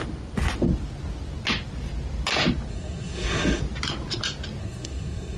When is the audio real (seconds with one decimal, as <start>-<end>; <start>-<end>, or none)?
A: 0.0-2.7; 3.6-4.6